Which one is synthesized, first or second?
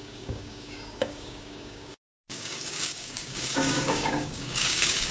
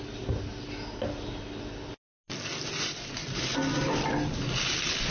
first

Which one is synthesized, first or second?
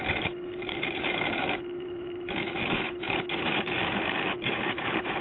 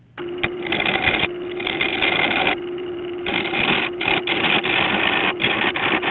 first